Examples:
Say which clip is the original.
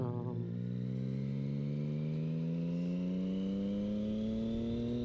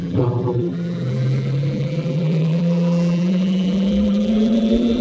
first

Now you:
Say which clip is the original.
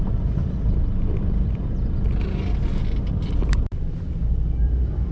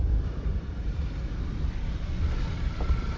first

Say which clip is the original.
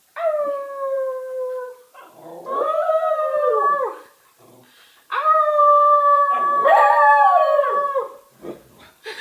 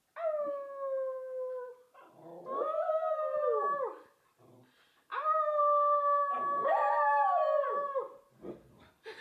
second